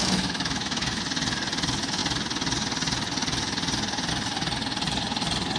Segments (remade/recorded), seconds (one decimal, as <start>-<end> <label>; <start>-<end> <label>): 0.0-1.0 remade; 1.0-5.6 recorded